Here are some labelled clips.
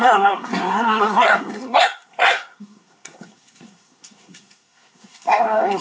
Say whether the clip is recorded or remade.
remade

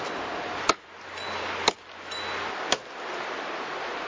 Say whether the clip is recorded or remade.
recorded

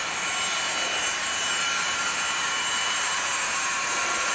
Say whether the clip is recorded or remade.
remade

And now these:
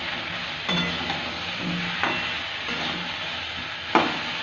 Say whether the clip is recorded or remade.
recorded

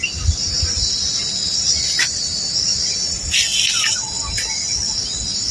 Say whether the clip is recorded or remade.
recorded